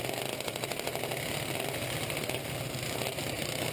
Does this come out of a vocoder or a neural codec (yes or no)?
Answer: no